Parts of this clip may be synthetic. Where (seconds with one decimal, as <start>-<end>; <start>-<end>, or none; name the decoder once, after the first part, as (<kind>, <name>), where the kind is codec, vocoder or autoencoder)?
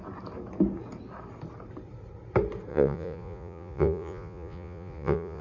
2.7-5.4 (vocoder, Vocos)